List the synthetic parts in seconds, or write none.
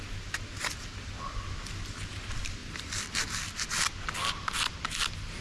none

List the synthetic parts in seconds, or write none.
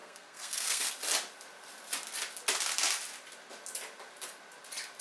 0.0-0.9 (codec, SNAC)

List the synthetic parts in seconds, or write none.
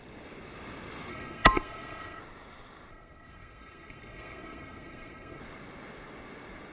1.1-2.2 (codec, SNAC); 2.9-5.4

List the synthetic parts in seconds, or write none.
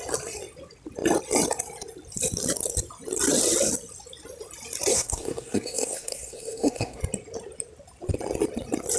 4.9-7.0 (codec, SNAC)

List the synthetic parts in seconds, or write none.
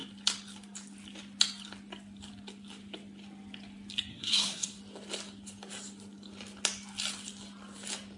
4.1-4.8 (codec, SNAC)